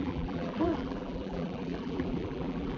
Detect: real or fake fake